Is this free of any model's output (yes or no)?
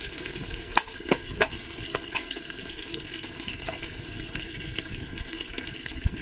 no